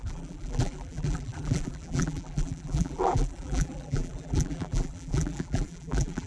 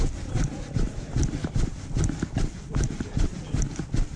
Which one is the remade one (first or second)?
first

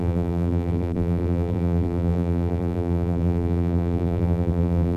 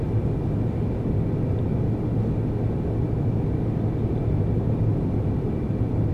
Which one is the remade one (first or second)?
first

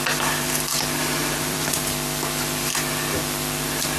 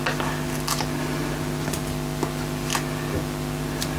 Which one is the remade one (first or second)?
first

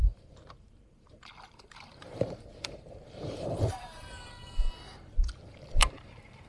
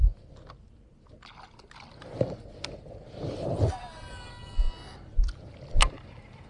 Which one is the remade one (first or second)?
first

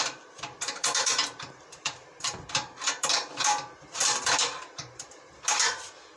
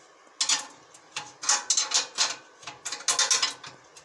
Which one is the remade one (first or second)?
first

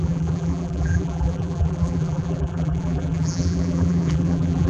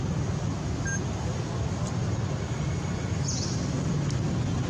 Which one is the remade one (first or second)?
first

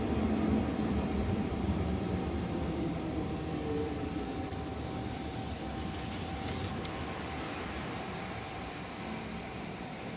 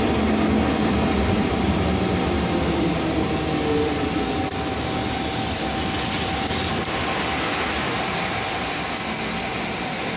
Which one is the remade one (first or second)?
first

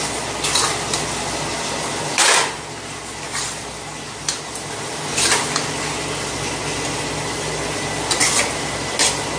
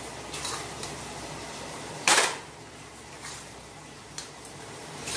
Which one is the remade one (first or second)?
second